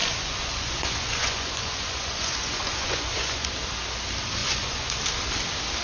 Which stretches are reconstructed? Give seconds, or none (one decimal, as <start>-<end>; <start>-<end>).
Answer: 0.0-3.5; 4.4-5.0

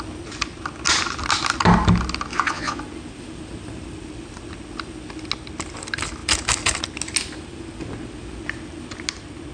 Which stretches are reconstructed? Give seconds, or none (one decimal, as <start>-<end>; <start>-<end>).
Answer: 2.3-2.8

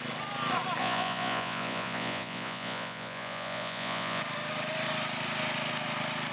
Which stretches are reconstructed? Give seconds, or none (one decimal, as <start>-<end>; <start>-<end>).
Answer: 0.8-4.2

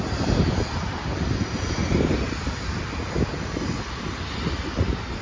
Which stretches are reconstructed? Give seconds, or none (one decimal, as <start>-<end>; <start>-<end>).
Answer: none

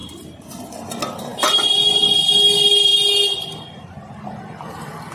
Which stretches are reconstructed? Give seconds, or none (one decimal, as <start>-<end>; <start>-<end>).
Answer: none